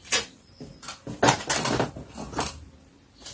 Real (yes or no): yes